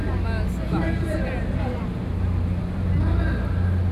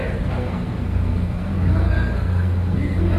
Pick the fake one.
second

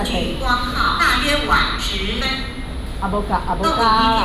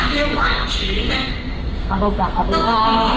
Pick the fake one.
second